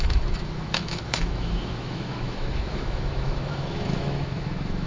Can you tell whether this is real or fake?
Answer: fake